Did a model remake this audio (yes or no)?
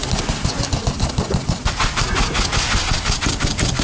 no